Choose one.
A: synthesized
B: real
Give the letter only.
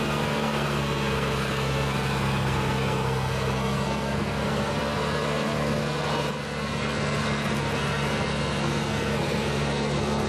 A